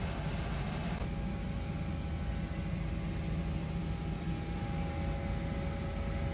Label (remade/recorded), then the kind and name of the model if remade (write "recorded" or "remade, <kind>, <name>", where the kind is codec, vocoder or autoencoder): recorded